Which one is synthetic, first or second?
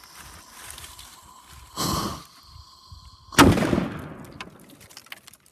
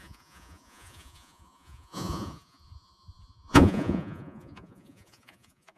second